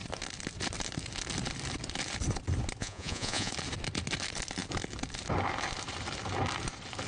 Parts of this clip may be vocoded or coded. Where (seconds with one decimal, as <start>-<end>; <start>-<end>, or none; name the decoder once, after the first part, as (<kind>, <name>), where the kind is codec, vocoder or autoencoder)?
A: 2.8-3.5 (vocoder, Vocos)